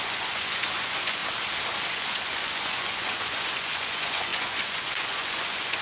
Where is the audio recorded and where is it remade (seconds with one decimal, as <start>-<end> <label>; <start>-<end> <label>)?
0.0-1.2 remade; 1.2-1.9 recorded; 1.9-5.8 remade